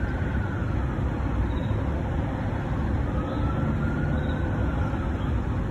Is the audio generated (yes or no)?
no